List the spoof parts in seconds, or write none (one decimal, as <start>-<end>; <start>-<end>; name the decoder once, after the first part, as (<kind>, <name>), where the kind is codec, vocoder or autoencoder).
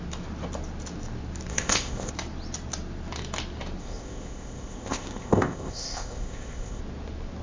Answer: 1.5-2.1 (codec, ZipCodec); 3.8-6.8